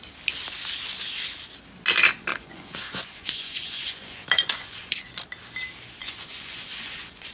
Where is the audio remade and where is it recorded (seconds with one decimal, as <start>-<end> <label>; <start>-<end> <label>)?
0.0-2.3 recorded; 2.3-5.2 remade; 5.2-6.0 recorded; 6.0-7.3 remade